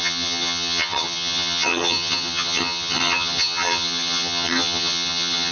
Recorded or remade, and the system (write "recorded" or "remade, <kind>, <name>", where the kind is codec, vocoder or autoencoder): remade, vocoder, HiFi-GAN